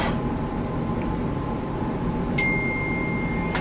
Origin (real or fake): real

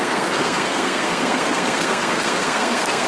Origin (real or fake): fake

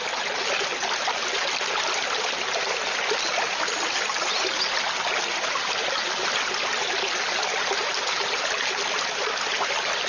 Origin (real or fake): real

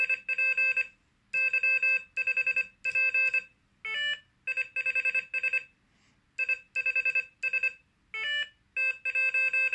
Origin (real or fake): real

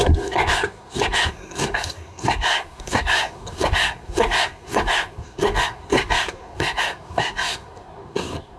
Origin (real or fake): fake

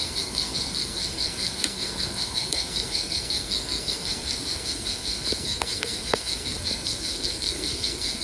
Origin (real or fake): fake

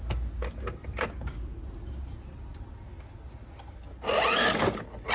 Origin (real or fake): real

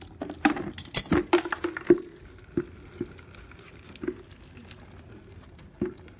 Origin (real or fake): real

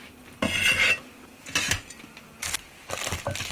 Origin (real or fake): real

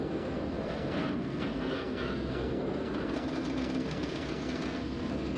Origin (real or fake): fake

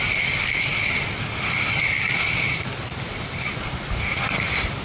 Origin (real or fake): real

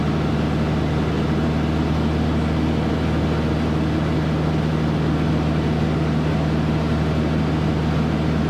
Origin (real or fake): real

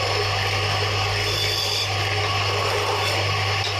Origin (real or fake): real